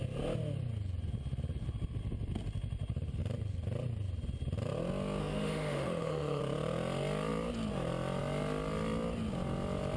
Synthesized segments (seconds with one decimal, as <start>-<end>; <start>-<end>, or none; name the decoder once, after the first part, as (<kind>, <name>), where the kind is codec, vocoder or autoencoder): 5.2-6.4 (autoencoder, DAC-VAE)